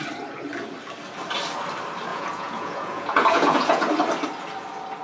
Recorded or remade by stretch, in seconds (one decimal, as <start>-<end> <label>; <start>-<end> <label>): 0.0-2.1 recorded; 2.1-3.8 remade; 3.8-5.0 recorded